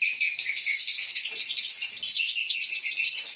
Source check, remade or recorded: recorded